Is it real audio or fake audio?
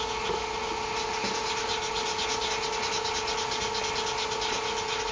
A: real